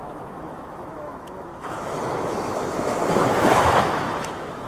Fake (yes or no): yes